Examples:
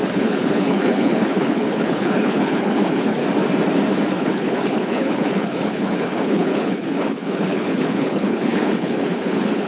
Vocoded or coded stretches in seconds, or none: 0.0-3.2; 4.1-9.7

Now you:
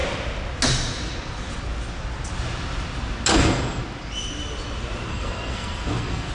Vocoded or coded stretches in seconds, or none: 3.3-3.8; 5.1-6.3